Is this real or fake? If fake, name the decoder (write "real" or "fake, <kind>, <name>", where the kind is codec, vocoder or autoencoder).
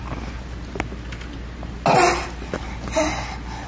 real